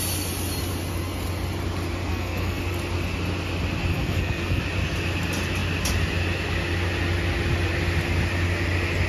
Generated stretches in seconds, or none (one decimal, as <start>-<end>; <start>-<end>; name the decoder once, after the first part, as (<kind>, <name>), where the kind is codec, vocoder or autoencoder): 2.1-2.6 (codec, SNAC); 3.9-4.6